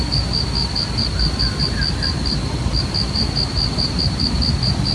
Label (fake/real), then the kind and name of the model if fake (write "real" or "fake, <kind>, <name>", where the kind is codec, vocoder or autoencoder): real